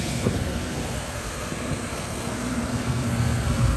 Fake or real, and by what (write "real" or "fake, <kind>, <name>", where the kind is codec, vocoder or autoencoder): fake, codec, SNAC